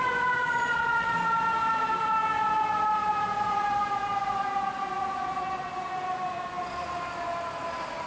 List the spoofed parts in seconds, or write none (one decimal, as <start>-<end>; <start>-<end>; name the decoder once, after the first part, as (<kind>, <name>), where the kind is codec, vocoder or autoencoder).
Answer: 0.4-1.1 (vocoder, Vocos)